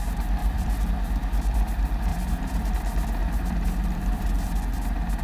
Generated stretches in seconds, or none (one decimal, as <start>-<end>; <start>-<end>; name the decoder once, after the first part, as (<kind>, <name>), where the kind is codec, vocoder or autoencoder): 0.4-0.9 (vocoder, BigVGAN v2); 2.1-2.7; 3.2-4.5